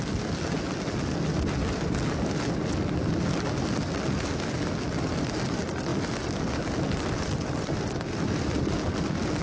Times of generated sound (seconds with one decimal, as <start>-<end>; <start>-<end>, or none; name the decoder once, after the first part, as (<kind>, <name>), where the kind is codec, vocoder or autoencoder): none